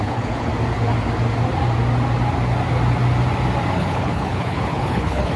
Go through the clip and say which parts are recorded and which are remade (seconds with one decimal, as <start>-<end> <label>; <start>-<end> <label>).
0.0-0.5 remade; 0.5-3.7 recorded; 3.7-5.4 remade